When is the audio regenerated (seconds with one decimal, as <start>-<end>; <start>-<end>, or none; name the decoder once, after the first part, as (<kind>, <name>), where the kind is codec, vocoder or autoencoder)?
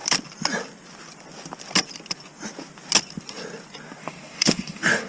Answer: 4.0-5.1 (codec, DAC)